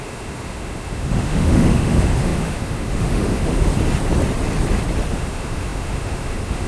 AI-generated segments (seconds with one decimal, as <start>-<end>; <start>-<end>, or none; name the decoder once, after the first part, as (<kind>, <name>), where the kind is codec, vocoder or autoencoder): 0.0-3.7 (autoencoder, DAC-VAE); 5.1-6.7